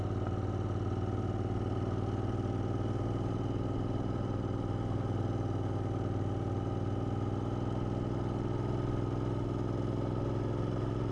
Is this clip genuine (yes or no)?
yes